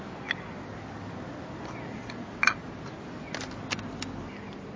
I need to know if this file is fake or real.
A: real